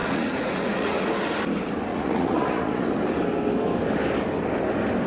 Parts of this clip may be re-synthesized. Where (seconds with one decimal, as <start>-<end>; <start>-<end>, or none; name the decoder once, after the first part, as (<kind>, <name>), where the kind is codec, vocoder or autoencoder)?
0.0-1.1 (vocoder, Vocos); 1.9-2.9